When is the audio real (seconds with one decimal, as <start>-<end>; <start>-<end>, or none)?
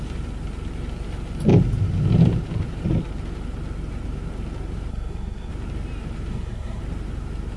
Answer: 0.0-4.9; 5.5-6.3; 6.8-7.6